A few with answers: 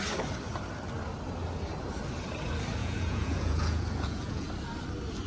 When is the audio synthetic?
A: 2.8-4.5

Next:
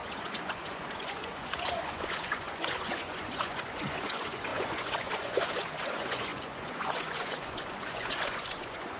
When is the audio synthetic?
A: 0.0-9.0

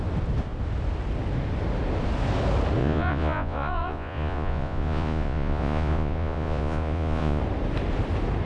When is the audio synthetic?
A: 2.8-7.4

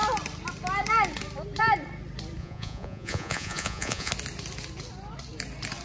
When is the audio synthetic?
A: 2.4-4.1

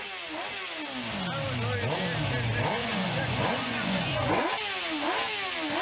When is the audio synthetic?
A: 2.8-4.5

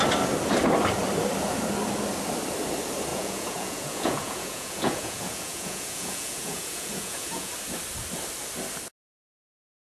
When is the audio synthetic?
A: 3.1-7.5

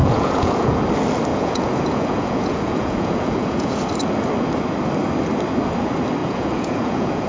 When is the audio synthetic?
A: 0.0-0.8; 1.3-3.8; 6.2-7.3

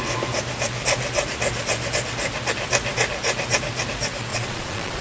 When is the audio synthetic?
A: 4.3-5.0